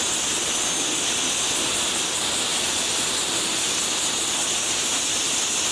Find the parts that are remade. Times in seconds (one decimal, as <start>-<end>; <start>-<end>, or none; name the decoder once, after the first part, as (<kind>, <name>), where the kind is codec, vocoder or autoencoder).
none